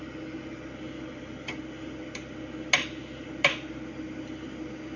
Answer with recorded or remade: recorded